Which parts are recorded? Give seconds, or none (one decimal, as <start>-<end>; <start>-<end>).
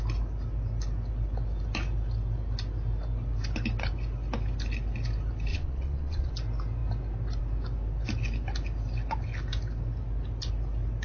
0.0-5.5; 6.3-11.0